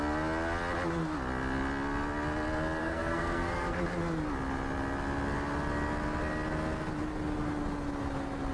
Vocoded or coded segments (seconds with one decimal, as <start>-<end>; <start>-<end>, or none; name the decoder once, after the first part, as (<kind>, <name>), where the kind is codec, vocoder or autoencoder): 2.8-3.8 (codec, SNAC)